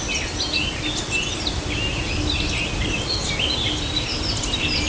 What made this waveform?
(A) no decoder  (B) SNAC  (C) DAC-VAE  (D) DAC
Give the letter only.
A